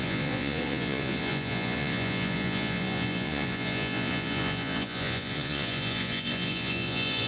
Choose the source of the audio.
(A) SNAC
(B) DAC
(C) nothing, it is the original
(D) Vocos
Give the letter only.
D